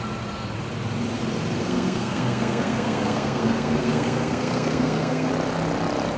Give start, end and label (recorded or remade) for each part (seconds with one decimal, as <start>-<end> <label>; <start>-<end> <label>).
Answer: 0.0-1.6 recorded; 1.6-5.3 remade; 5.3-6.2 recorded